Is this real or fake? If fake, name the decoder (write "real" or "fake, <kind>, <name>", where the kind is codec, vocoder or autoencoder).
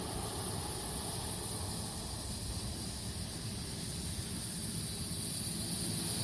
real